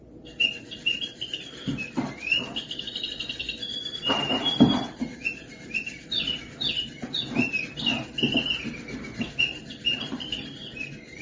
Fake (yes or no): yes